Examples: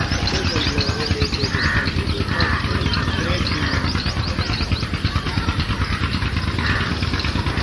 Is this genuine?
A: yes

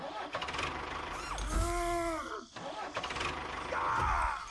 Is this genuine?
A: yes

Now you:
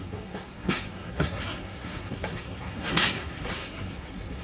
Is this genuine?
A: no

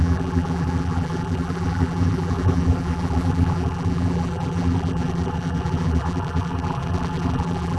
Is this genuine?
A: no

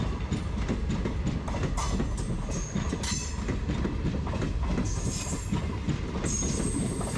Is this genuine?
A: yes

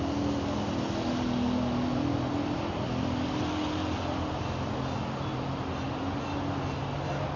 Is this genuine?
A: yes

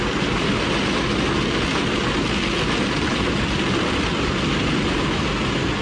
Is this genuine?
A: yes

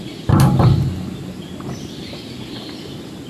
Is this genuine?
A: yes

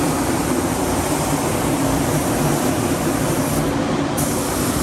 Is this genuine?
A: no